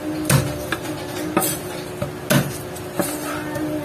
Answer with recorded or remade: recorded